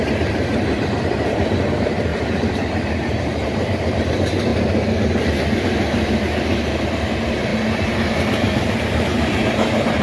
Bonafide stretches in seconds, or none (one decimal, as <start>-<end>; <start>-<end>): none